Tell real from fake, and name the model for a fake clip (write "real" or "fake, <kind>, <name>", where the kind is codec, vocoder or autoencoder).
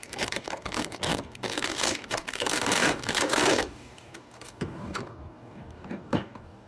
fake, codec, DAC